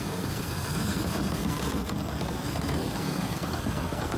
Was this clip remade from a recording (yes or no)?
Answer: yes